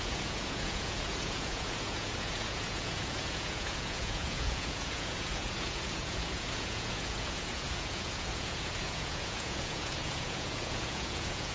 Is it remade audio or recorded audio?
remade